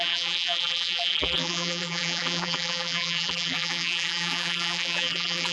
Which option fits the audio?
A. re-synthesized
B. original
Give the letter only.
A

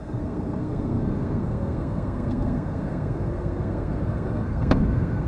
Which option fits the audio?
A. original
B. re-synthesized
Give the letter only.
B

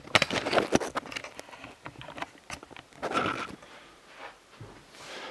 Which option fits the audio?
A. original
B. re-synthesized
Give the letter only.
A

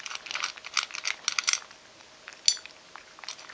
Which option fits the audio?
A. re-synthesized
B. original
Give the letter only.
B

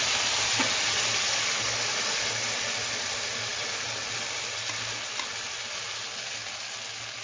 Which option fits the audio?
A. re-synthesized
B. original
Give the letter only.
B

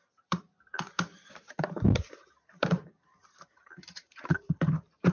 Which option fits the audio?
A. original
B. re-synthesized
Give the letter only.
B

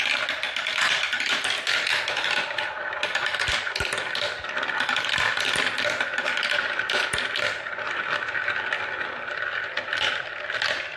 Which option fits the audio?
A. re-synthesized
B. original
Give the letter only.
B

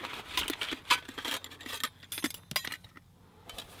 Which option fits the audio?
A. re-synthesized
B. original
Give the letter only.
B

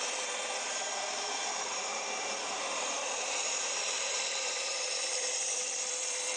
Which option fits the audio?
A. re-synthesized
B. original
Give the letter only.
A